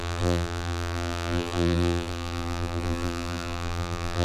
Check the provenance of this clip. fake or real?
fake